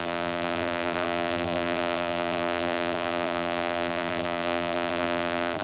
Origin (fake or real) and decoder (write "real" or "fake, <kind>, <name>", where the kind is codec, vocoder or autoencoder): fake, vocoder, BigVGAN v2